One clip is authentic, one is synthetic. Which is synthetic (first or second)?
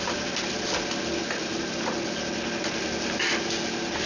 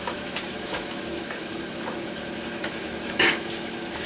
second